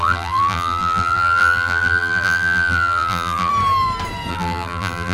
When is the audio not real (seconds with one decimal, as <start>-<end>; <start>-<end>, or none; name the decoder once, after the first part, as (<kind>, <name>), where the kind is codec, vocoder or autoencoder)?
0.0-3.5 (vocoder, BigVGAN v2); 4.3-5.1